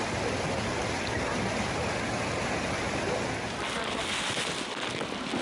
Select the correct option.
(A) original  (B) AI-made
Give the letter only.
A